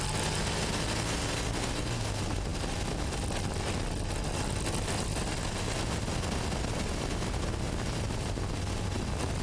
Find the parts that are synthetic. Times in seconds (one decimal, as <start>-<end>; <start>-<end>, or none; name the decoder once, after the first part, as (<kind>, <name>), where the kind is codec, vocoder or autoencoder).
none